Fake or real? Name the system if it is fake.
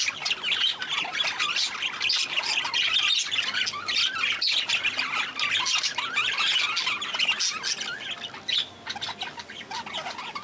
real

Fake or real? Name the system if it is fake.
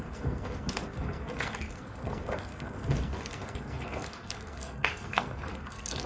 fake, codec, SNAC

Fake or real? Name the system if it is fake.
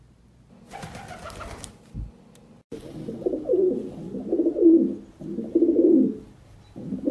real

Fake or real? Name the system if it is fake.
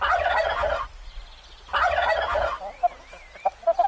real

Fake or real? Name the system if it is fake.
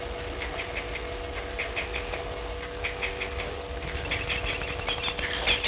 real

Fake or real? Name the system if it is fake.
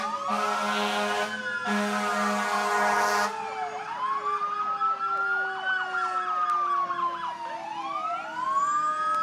real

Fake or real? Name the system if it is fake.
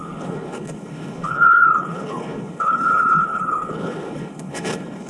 fake, codec, HILCodec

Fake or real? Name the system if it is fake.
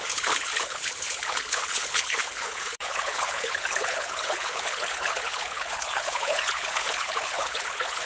fake, codec, HILCodec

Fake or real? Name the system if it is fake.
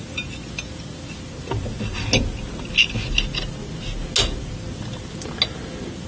real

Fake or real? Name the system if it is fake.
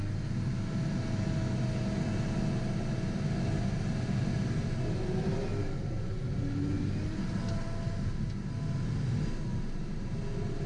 real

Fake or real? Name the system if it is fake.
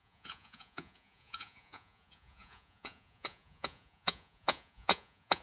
fake, vocoder, Vocos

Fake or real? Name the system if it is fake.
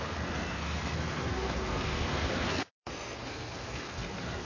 fake, codec, SNAC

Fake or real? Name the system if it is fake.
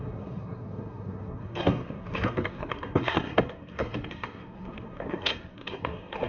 fake, codec, SNAC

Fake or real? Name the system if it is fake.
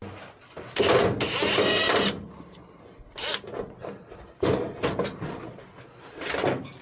real